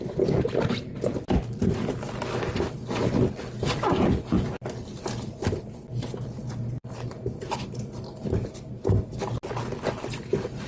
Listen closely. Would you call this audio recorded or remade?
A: recorded